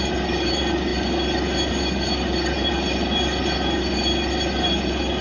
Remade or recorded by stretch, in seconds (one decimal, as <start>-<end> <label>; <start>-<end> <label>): 0.0-5.2 recorded